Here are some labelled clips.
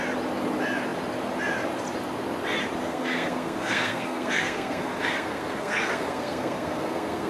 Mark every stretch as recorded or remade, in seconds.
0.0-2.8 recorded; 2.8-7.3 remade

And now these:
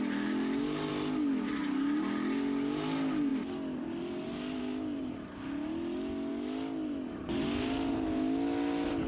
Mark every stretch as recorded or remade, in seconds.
0.0-9.1 recorded

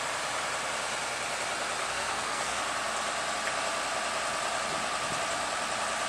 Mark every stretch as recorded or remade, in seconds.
0.0-1.8 recorded; 1.8-2.6 remade; 2.6-6.1 recorded

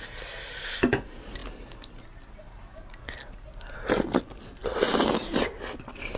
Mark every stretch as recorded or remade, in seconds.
0.0-6.2 recorded

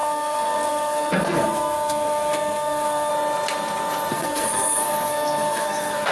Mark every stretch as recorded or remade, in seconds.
0.0-3.1 remade; 3.1-4.1 recorded; 4.1-6.1 remade

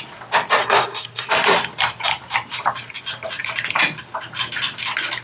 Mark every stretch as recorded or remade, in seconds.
0.0-0.6 recorded; 0.6-1.3 remade; 1.3-5.2 recorded